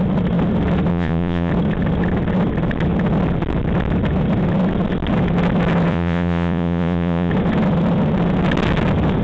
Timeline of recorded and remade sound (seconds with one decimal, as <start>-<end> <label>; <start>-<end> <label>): 0.0-0.9 recorded; 0.9-1.5 remade; 1.5-5.9 recorded; 5.9-7.3 remade; 7.3-9.2 recorded